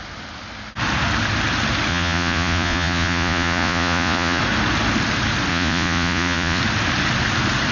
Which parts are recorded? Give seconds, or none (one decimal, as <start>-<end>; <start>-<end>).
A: 0.0-1.9; 4.4-5.5; 6.6-7.7

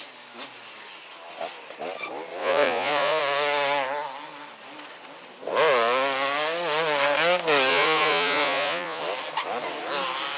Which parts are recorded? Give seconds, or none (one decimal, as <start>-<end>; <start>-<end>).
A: 0.0-2.4; 3.2-7.7; 9.0-10.4

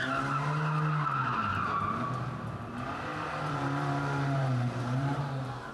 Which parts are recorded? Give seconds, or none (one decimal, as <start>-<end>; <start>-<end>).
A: 0.0-3.1; 5.3-5.7

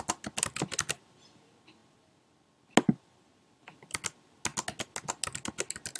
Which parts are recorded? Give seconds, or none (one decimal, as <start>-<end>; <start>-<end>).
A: 0.0-6.0